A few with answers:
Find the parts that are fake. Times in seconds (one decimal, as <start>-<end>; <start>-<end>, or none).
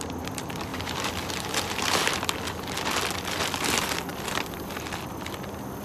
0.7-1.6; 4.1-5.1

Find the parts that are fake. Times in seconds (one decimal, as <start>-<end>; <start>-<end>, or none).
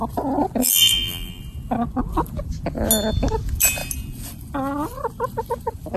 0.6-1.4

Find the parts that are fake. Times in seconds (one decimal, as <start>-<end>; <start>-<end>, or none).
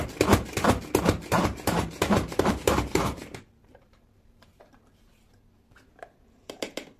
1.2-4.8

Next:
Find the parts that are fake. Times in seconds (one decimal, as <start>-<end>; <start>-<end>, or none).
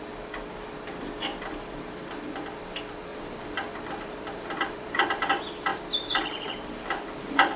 1.3-2.1; 3.1-5.3; 5.7-7.6